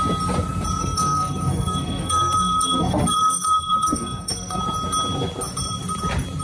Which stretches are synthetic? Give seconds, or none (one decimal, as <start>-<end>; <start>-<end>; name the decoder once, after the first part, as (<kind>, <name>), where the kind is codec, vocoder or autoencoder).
0.8-4.6 (codec, SNAC)